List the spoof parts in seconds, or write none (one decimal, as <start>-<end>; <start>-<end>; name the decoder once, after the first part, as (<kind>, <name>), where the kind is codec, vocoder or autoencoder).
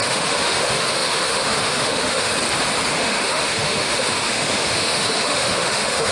0.0-2.3 (autoencoder, DAC-VAE); 2.9-6.1